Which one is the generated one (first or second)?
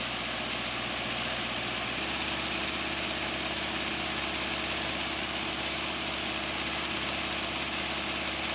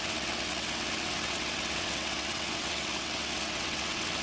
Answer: second